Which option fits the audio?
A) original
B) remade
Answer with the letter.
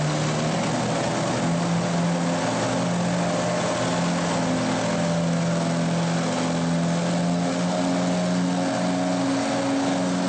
A